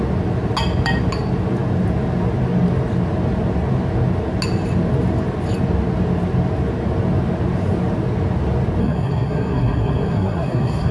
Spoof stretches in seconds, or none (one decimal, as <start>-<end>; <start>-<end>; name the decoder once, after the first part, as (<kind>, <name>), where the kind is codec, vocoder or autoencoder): 8.8-10.9 (codec, SNAC)